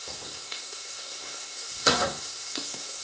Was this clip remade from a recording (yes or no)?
yes